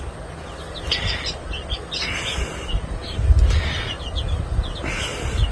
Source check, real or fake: real